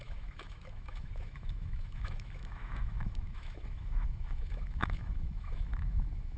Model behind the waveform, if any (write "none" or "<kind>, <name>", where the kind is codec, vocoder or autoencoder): autoencoder, DAC-VAE